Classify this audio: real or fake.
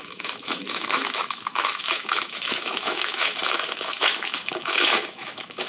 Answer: fake